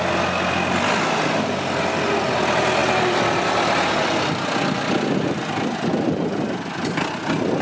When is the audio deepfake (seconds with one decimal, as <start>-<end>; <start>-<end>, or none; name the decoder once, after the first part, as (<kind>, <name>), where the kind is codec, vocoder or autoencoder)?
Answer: none